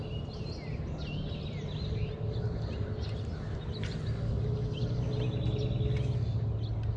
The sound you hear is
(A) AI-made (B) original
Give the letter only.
B